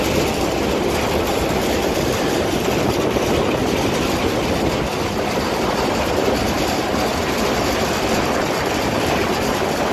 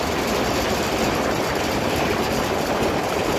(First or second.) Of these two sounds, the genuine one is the second